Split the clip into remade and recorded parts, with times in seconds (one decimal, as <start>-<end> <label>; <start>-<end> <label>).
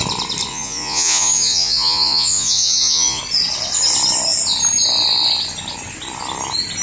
0.0-0.5 recorded; 0.5-3.2 remade; 3.2-6.8 recorded